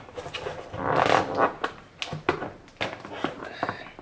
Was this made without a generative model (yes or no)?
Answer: yes